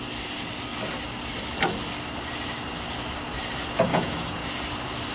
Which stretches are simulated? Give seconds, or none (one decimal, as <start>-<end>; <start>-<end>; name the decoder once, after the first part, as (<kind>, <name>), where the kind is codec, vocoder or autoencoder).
3.9-4.5 (vocoder, Vocos)